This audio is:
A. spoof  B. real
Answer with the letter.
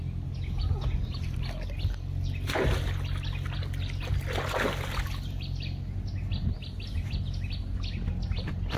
B